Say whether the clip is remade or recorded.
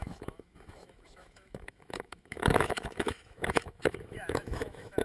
remade